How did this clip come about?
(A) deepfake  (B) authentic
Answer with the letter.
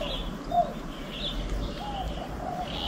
B